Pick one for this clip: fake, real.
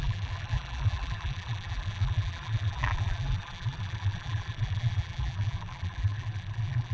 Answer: fake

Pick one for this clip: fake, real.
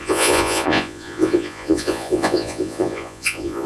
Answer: fake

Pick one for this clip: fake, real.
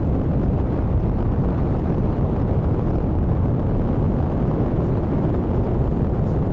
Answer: real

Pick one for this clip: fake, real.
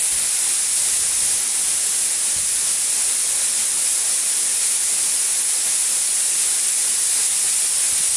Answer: real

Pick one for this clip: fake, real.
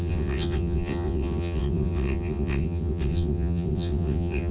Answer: fake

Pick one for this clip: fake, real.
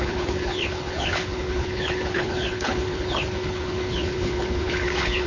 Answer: fake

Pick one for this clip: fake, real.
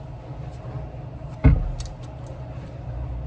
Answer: real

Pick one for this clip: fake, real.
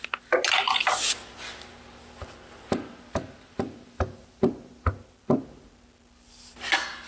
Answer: real